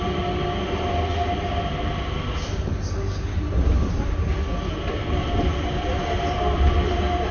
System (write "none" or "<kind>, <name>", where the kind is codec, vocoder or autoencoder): none